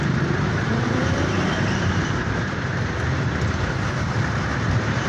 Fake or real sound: fake